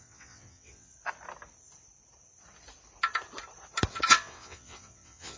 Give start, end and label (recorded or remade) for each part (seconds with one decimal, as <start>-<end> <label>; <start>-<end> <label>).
0.0-0.9 remade; 0.9-4.1 recorded; 4.1-5.4 remade